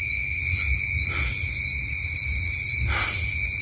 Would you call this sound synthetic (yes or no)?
no